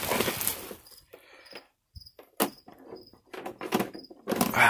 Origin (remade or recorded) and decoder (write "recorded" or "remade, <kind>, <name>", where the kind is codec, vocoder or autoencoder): recorded